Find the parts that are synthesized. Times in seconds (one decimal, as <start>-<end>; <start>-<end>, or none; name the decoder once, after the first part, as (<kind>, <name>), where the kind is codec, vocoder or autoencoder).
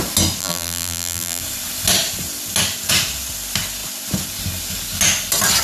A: 0.4-1.4 (vocoder, BigVGAN v2)